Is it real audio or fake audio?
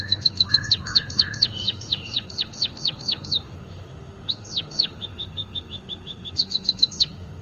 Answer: fake